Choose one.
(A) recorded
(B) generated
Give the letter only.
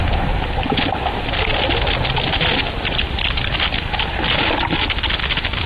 A